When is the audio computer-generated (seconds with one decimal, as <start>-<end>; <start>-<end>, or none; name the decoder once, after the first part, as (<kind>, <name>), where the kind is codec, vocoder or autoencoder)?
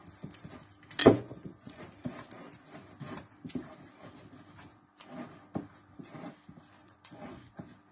1.0-1.8 (vocoder, Vocos); 6.8-7.5